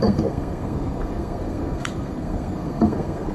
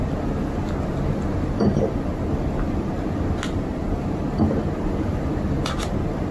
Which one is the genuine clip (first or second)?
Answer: second